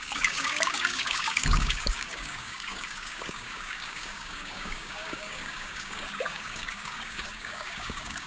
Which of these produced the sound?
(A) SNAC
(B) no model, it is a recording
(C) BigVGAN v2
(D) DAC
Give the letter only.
D